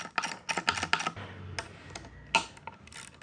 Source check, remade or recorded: recorded